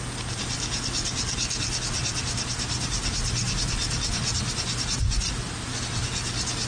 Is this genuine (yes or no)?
yes